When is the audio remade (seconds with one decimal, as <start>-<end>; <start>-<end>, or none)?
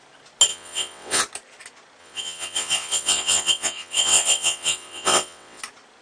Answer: 0.5-1.2; 2.0-5.6